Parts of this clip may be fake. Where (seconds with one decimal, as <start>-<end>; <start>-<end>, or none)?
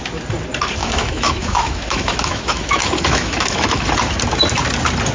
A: 0.8-3.9